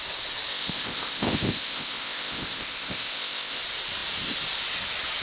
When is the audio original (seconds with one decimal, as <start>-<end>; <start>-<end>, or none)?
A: 0.0-0.5; 3.6-5.2